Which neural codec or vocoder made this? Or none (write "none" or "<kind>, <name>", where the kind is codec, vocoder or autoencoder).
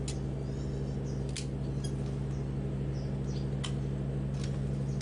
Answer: none